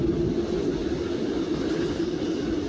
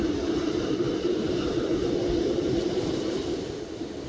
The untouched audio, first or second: first